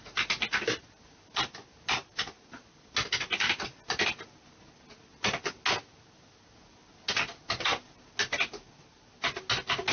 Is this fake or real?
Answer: real